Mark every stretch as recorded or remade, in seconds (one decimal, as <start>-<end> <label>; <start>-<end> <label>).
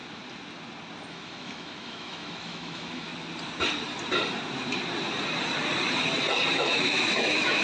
0.0-1.1 recorded; 1.1-3.1 remade; 3.1-6.5 recorded; 6.5-7.6 remade